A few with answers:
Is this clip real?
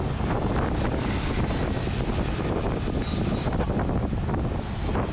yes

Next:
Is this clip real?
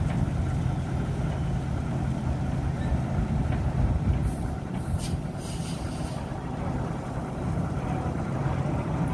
no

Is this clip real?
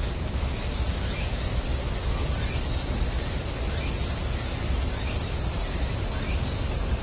yes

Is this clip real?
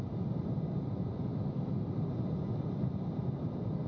no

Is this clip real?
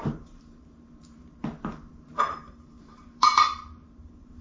no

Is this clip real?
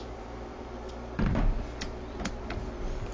no